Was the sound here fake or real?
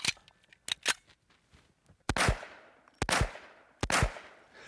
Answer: real